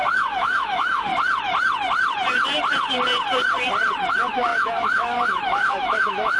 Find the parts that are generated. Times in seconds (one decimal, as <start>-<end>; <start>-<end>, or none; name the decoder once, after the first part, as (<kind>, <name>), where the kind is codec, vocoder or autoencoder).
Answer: 0.0-1.1 (autoencoder, DAC-VAE); 4.1-6.4